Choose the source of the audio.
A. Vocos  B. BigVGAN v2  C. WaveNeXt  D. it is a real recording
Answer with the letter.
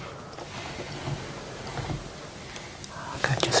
D